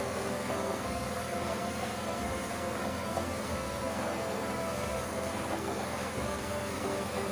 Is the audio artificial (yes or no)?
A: yes